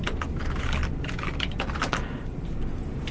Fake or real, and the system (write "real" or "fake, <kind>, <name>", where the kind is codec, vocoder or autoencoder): real